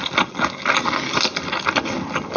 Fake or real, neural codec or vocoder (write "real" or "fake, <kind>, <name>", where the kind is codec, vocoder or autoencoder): real